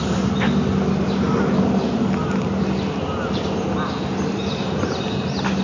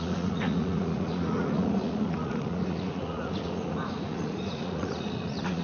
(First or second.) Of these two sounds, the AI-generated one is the second